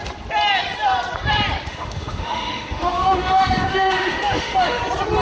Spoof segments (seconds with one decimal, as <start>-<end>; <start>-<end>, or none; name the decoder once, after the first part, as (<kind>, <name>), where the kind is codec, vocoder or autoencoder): 1.7-4.8 (autoencoder, DAC-VAE)